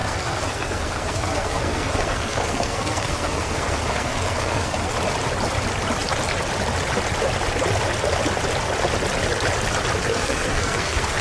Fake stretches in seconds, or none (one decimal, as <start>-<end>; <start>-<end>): 0.0-4.9; 10.1-11.2